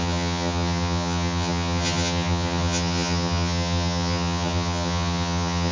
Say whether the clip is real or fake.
fake